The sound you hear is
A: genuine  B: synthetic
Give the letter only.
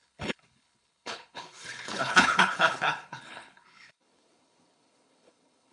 B